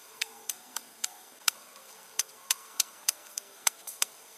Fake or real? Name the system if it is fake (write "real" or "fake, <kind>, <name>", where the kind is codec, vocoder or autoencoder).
fake, codec, SNAC